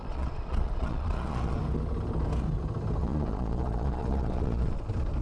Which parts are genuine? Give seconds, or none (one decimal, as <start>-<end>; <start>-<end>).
1.6-3.0; 4.8-5.2